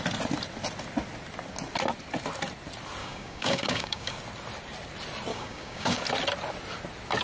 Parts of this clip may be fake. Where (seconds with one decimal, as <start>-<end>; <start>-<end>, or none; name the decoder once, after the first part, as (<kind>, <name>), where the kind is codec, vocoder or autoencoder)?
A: 3.0-4.2 (codec, DAC); 5.3-6.0